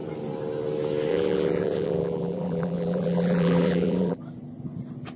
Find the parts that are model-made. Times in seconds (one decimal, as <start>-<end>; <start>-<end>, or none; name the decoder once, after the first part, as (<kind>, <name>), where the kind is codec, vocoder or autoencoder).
1.1-4.2 (vocoder, BigVGAN v2)